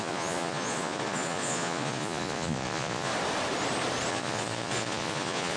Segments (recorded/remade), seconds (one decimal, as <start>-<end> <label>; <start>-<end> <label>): 0.0-3.1 remade; 3.1-4.1 recorded; 4.1-5.6 remade